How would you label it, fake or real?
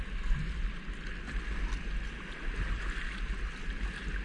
real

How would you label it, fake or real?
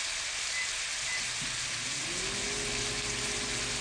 real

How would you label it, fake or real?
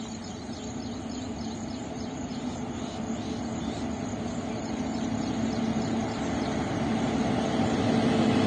real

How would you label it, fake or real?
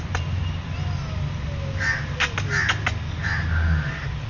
real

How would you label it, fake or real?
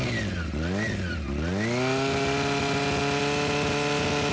real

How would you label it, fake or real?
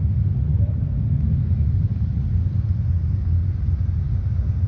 real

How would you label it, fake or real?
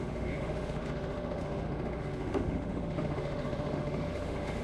fake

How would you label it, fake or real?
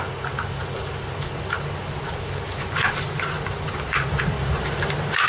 real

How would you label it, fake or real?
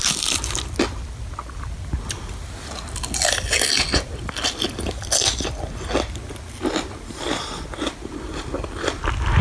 real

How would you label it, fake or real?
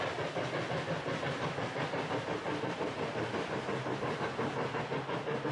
real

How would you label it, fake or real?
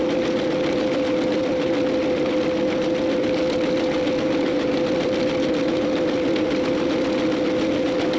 real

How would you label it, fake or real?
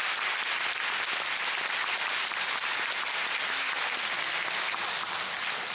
real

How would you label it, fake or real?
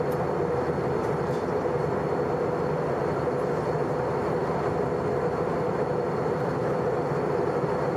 real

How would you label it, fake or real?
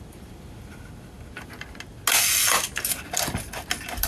real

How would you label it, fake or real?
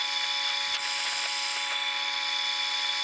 real